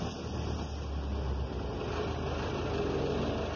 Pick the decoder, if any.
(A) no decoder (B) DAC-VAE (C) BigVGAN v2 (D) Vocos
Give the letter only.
A